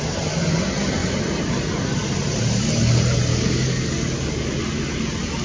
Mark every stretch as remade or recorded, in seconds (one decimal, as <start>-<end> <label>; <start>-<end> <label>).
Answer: 0.0-3.3 recorded; 3.3-4.5 remade; 4.5-5.4 recorded